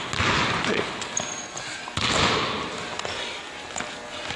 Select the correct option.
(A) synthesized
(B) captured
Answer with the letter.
B